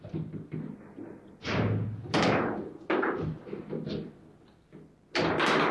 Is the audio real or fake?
real